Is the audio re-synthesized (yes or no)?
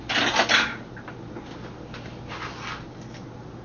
no